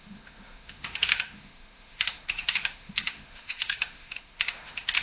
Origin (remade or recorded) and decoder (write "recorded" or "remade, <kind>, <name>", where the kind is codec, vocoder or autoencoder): remade, autoencoder, DAC-VAE